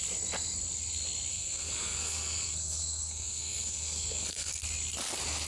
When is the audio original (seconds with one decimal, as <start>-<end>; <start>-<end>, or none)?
0.0-1.3; 4.6-5.5

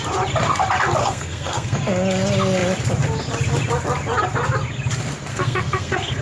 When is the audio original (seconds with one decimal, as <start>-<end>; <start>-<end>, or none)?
0.0-1.0; 1.8-5.3